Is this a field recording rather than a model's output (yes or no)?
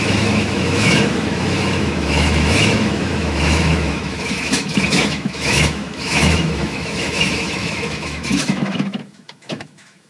no